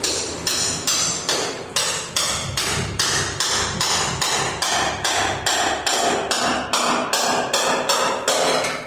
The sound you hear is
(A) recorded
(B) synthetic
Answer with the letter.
A